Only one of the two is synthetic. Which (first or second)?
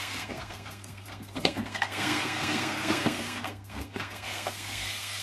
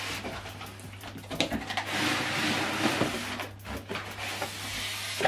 first